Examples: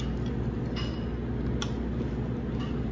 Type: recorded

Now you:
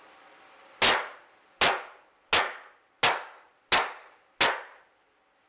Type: recorded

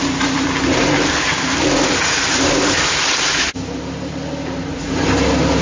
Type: recorded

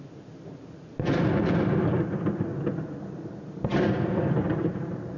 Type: recorded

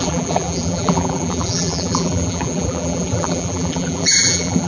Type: remade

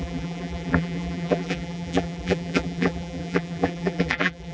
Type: remade